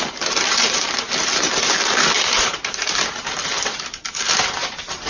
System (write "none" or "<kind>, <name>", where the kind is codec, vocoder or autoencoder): vocoder, BigVGAN v2